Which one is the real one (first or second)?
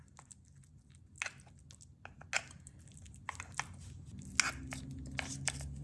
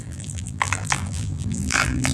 first